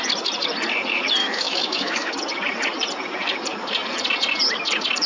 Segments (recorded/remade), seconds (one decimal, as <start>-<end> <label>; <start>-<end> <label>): 0.0-1.2 recorded; 1.2-2.1 remade; 2.1-5.1 recorded